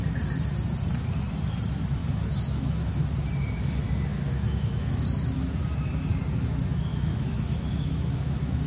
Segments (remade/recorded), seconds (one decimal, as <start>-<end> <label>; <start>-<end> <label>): 0.0-2.0 recorded; 2.0-3.0 remade; 3.0-4.1 recorded; 4.1-5.0 remade; 5.0-6.9 recorded; 6.9-8.7 remade

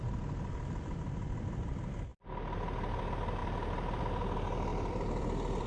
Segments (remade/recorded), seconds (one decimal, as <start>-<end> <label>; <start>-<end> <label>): 0.0-4.7 recorded; 4.7-5.2 remade; 5.2-5.7 recorded

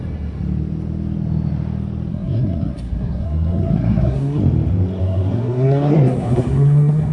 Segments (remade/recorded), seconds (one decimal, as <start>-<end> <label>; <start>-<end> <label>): 0.0-2.1 recorded; 2.1-4.4 remade; 4.4-5.0 recorded; 5.0-7.1 remade